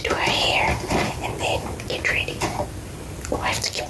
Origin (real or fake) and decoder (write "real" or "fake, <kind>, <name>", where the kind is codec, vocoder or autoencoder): real